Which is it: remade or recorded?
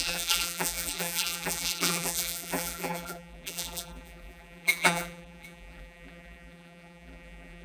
remade